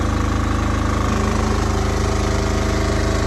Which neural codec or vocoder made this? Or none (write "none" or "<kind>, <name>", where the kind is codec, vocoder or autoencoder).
vocoder, BigVGAN v2